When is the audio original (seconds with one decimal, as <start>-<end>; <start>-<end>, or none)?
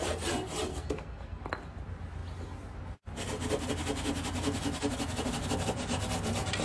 0.0-0.7; 1.4-6.6